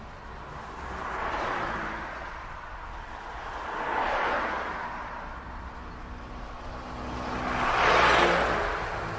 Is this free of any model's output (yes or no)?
yes